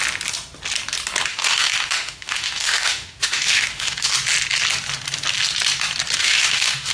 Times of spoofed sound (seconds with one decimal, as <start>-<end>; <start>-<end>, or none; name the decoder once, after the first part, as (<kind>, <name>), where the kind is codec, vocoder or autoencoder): 1.3-4.1 (autoencoder, DAC-VAE); 6.2-6.9